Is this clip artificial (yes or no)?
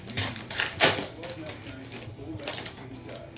yes